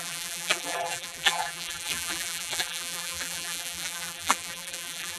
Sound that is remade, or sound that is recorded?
remade